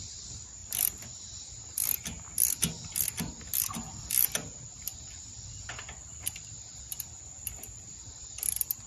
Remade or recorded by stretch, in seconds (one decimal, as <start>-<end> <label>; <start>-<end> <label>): 0.0-8.9 recorded

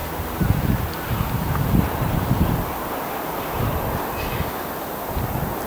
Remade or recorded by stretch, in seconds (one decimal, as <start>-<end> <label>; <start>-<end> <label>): 0.0-5.7 recorded